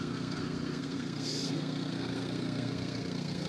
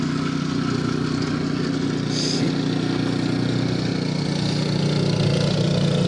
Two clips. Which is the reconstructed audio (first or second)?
first